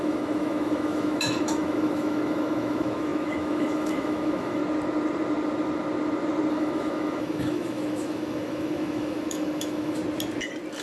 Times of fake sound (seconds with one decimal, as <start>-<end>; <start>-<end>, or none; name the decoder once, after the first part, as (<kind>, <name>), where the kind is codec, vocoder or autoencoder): 0.0-4.6 (autoencoder, DAC-VAE); 6.5-10.0